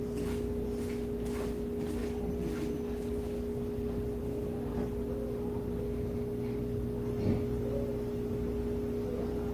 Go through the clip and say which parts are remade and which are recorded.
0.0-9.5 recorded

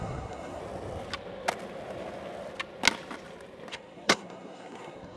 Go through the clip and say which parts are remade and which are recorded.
0.0-0.6 remade; 0.6-3.7 recorded; 3.7-5.2 remade

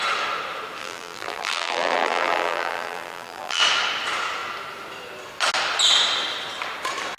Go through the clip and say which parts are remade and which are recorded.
0.0-0.8 recorded; 0.8-3.6 remade; 3.6-7.2 recorded

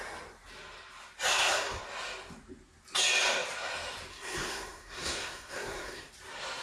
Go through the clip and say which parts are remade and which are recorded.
0.0-1.3 recorded; 1.3-1.8 remade; 1.8-4.1 recorded; 4.1-6.1 remade; 6.1-6.6 recorded

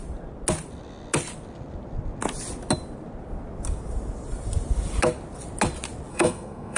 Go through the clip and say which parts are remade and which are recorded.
0.0-6.1 recorded; 6.1-6.8 remade

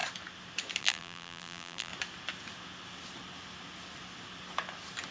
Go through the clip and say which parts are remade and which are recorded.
0.0-0.8 recorded; 0.8-1.9 remade; 1.9-5.1 recorded

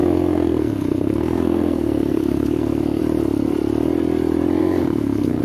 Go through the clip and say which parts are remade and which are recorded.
0.0-3.0 remade; 3.0-4.6 recorded; 4.6-5.4 remade